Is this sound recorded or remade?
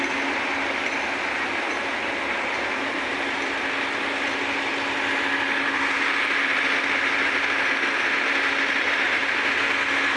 recorded